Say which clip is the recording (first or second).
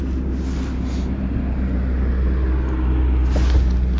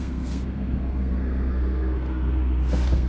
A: first